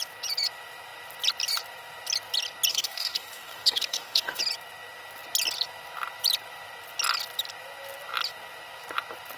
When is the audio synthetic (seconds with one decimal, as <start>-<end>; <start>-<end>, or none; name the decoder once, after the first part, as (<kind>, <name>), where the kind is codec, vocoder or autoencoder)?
2.7-4.4 (codec, DAC)